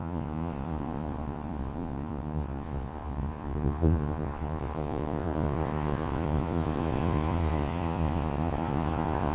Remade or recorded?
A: remade